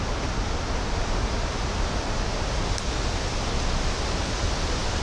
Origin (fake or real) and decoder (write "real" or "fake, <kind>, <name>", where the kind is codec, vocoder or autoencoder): real